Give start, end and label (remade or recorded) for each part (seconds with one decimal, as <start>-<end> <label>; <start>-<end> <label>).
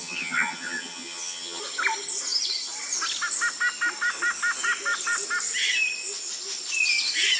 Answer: 0.0-1.6 remade; 1.6-7.4 recorded